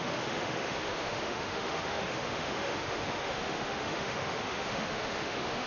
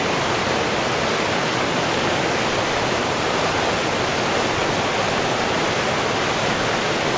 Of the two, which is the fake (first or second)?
first